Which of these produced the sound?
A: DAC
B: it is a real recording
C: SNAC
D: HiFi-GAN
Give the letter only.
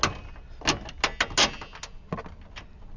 B